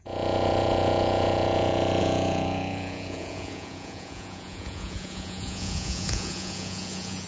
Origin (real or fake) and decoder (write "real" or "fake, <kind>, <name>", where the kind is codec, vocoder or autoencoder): fake, vocoder, Vocos